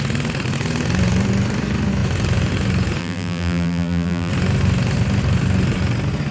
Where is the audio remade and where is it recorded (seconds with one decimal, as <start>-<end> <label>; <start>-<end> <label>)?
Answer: 0.0-3.0 recorded; 3.0-4.3 remade; 4.3-6.3 recorded